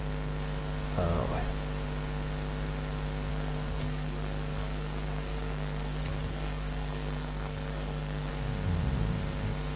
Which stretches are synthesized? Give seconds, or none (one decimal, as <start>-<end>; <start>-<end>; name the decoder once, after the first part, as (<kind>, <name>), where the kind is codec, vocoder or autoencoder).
3.3-8.3 (codec, SNAC)